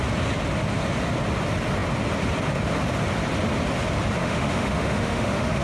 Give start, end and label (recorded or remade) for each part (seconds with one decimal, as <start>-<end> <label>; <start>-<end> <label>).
0.0-4.2 recorded; 4.2-5.6 remade